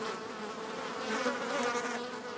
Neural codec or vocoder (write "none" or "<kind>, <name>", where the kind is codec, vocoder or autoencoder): none